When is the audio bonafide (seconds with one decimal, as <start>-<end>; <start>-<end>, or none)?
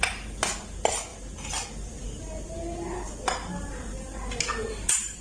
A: 0.0-4.5